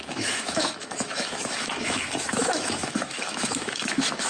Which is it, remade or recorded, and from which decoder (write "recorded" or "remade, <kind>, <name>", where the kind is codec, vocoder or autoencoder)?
remade, autoencoder, DAC-VAE